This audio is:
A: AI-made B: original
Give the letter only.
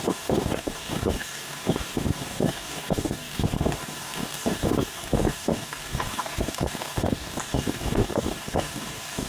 A